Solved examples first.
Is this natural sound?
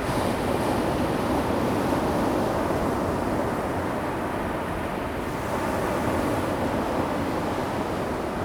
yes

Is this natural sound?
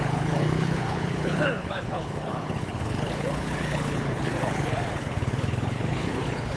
no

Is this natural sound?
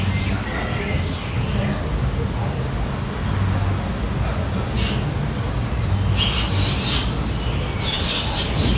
yes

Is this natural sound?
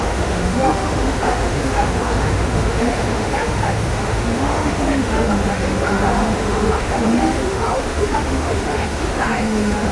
no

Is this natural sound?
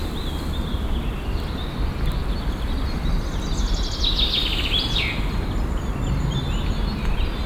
yes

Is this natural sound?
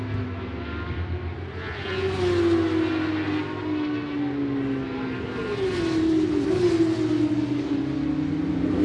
yes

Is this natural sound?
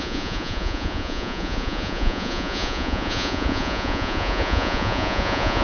no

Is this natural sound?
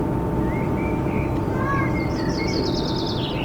yes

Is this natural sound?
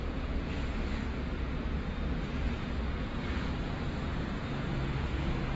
no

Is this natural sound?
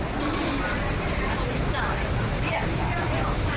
yes